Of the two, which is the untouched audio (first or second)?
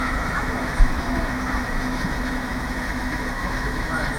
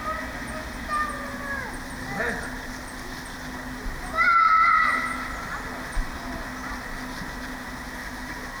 second